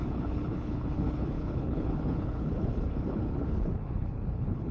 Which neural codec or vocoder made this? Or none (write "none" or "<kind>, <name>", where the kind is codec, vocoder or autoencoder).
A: codec, HILCodec